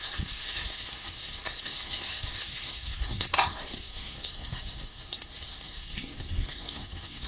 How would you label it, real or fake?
fake